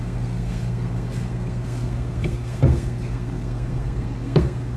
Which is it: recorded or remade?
remade